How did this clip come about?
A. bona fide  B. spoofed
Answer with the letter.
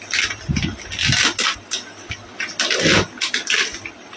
A